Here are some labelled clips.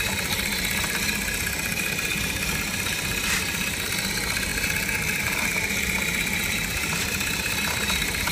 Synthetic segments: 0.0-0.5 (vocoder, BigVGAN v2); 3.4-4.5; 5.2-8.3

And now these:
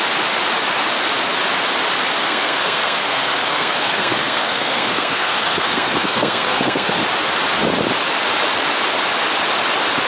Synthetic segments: 2.2-7.0 (codec, SNAC)

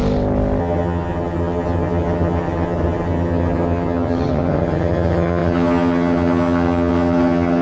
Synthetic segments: 0.6-7.6 (vocoder, HiFi-GAN)

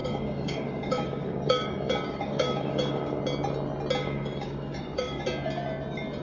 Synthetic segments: 0.0-3.2 (codec, DAC); 4.0-5.2

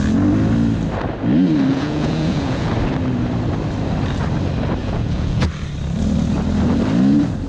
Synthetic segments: 1.7-2.7 (vocoder, Vocos); 4.8-5.5

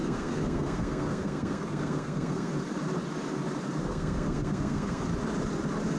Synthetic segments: 0.0-2.5 (codec, SNAC); 3.8-5.1

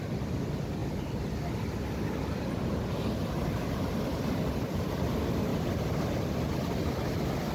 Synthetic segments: none

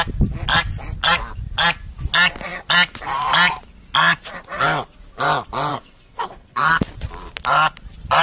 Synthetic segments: 5.7-6.8 (codec, SNAC)